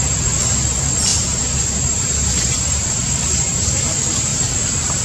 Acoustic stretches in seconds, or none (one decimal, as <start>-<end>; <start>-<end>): 0.0-1.1; 3.8-4.3